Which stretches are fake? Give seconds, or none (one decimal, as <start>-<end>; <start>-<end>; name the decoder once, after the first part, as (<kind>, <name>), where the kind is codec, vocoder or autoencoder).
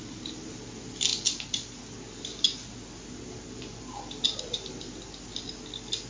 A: none